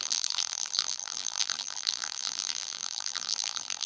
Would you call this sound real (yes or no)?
no